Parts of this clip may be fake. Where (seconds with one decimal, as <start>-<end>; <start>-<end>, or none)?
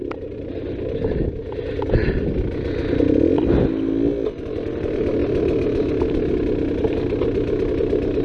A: 5.2-5.9